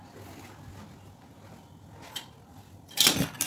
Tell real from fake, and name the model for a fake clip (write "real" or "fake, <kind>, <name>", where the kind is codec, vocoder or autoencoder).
real